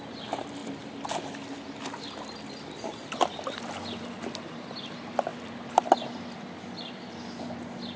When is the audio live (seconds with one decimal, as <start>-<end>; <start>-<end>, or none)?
0.0-8.0